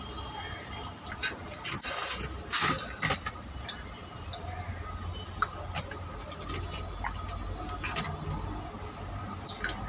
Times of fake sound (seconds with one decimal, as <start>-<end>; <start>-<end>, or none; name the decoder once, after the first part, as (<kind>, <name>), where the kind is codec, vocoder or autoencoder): none